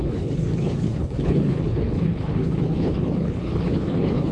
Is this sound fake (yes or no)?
yes